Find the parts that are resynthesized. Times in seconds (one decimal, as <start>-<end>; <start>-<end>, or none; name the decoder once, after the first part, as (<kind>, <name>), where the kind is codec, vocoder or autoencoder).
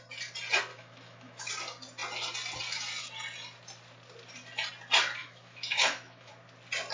0.7-1.5 (autoencoder, DAC-VAE); 5.2-6.3